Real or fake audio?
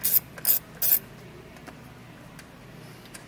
real